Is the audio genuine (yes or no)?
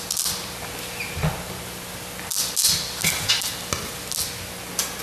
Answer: yes